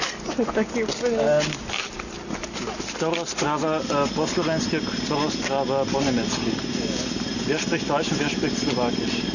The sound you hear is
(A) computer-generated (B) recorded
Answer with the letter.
B